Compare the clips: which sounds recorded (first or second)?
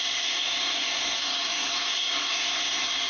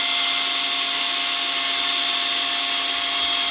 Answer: second